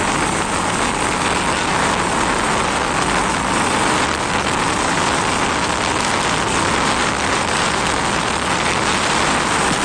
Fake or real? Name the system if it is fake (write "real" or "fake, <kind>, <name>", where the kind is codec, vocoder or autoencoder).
real